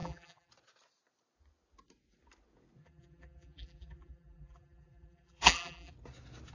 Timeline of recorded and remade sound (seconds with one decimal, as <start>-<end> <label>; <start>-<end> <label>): 0.0-0.5 remade; 0.5-2.8 recorded; 2.8-5.9 remade; 5.9-6.5 recorded